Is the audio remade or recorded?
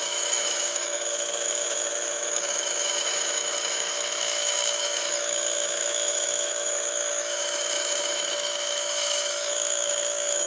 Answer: remade